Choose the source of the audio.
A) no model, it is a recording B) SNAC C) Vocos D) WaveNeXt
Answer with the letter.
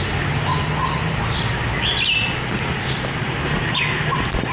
A